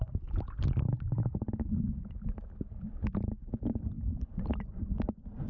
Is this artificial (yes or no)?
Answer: no